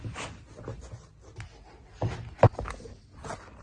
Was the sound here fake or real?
real